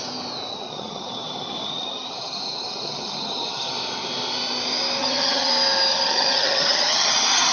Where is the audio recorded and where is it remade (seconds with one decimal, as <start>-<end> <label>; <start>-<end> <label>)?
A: 0.0-0.5 recorded; 0.5-3.7 remade; 3.7-5.0 recorded; 5.0-5.5 remade; 5.5-5.9 recorded; 5.9-7.5 remade